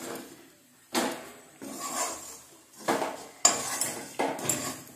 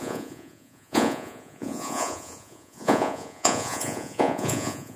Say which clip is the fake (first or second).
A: second